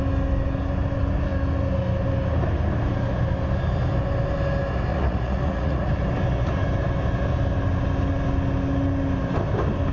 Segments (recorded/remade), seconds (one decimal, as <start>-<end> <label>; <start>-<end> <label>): 0.0-4.9 recorded; 4.9-5.9 remade; 5.9-9.9 recorded